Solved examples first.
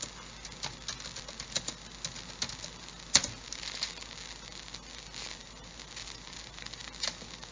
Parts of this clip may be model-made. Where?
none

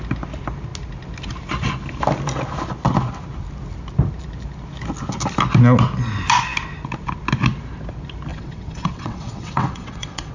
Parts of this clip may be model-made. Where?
8.3-10.3

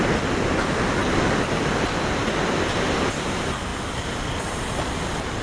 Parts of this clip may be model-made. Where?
none